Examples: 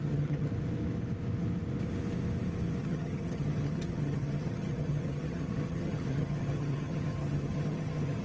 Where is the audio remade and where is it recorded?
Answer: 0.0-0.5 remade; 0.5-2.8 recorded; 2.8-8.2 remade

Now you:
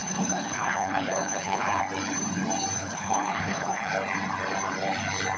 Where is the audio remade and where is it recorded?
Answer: 0.0-1.8 remade; 1.8-2.8 recorded; 2.8-3.9 remade; 3.9-5.4 recorded

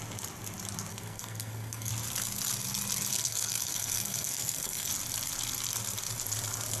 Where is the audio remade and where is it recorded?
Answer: 0.0-0.9 recorded; 0.9-1.9 remade; 1.9-3.1 recorded; 3.1-4.9 remade; 4.9-6.8 recorded

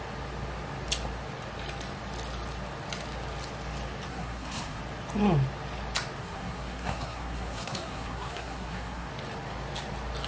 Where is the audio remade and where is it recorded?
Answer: 0.0-4.1 recorded; 4.1-4.8 remade; 4.8-6.2 recorded; 6.2-9.1 remade; 9.1-10.3 recorded

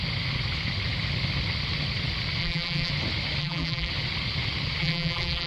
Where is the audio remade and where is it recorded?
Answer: 0.0-2.4 recorded; 2.4-2.9 remade; 2.9-3.4 recorded; 3.4-3.9 remade; 3.9-4.8 recorded; 4.8-5.5 remade

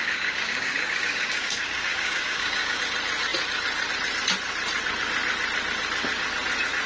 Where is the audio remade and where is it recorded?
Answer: 0.0-2.8 remade; 2.8-6.9 recorded

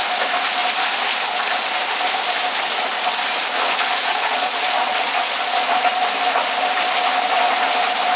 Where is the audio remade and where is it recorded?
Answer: 0.0-3.5 recorded; 3.5-5.9 remade; 5.9-8.2 recorded